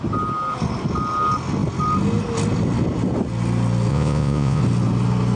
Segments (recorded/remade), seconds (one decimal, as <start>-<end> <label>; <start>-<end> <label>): 0.0-3.9 recorded; 3.9-4.6 remade; 4.6-5.4 recorded